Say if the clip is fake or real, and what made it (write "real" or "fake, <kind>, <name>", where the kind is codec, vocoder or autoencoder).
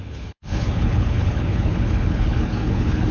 fake, codec, HILCodec